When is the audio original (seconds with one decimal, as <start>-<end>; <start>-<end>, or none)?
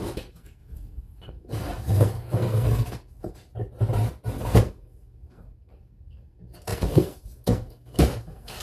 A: 3.5-4.4